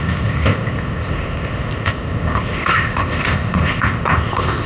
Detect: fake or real fake